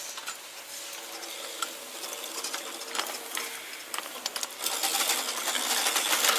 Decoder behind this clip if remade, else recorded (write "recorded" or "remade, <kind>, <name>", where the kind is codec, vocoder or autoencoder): recorded